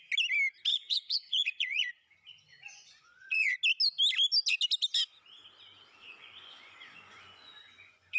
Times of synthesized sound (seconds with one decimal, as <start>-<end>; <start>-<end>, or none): 0.7-1.9; 2.5-3.6; 6.0-8.2